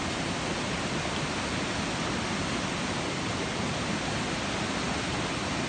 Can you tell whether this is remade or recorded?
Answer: recorded